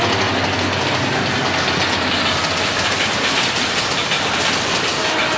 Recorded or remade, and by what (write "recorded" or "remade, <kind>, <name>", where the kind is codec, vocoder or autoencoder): recorded